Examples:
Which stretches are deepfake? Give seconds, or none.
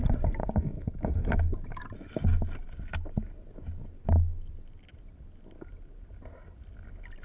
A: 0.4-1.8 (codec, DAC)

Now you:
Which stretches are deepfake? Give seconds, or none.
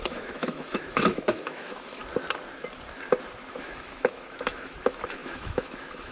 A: 0.0-2.0 (autoencoder, DAC-VAE); 3.5-6.1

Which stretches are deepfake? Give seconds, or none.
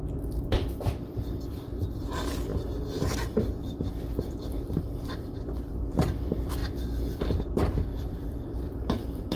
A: 0.0-6.6 (vocoder, BigVGAN v2); 7.4-9.4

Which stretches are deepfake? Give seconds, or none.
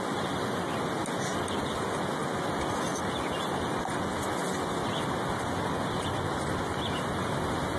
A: none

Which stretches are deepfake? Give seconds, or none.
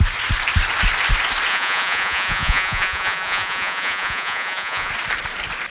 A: 1.5-4.9 (vocoder, Vocos)